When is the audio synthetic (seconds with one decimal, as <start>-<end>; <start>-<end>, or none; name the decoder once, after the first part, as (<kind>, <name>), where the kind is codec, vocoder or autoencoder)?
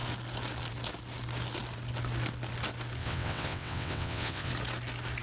3.0-4.5 (vocoder, WaveNeXt)